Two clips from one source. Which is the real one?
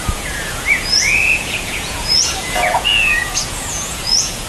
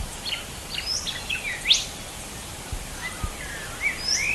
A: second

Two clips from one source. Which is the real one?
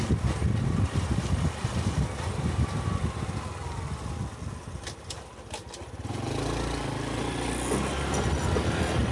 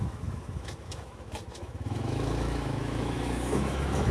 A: first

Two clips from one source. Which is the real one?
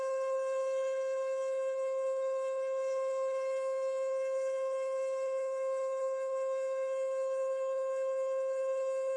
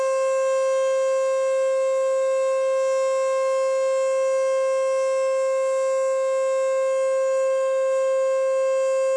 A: second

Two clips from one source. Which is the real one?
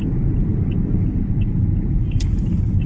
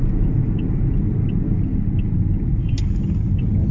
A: second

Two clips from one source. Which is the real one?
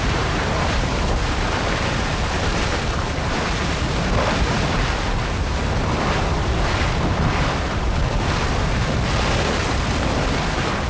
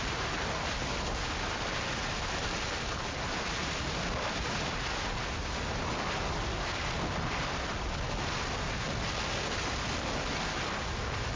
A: second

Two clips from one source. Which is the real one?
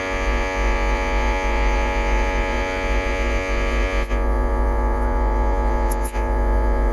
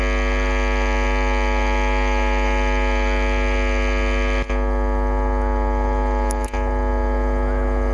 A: second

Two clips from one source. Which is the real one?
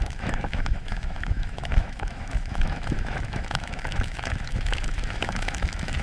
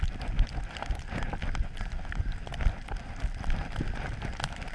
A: second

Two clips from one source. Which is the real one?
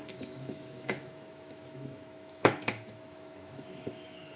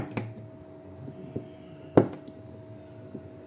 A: second